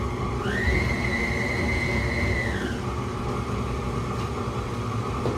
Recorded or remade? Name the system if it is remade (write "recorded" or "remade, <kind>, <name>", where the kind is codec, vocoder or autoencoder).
recorded